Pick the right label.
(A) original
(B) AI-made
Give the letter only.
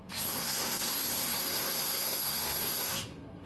B